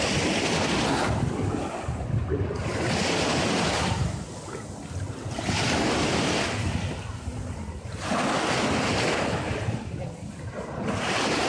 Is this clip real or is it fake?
real